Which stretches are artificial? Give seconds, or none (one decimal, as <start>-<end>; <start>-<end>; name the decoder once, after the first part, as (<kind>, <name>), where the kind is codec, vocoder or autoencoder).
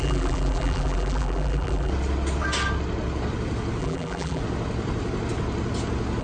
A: 0.0-1.9 (vocoder, BigVGAN v2); 3.8-4.4